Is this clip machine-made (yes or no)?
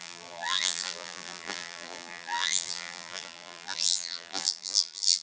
yes